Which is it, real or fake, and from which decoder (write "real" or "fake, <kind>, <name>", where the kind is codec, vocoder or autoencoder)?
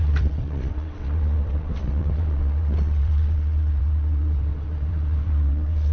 fake, vocoder, WaveNeXt